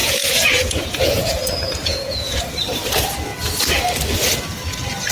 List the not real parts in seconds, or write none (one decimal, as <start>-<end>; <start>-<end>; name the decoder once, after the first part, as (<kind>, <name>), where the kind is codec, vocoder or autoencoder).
0.0-2.4 (vocoder, Vocos)